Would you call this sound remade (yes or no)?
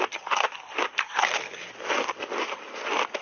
no